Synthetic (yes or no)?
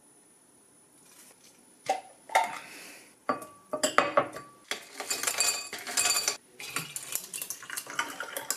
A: no